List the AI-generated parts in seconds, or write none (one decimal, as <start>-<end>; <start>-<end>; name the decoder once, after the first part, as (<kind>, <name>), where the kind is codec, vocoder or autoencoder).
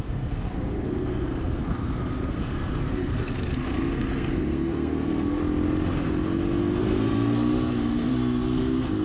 0.0-5.4 (codec, SNAC); 6.8-9.0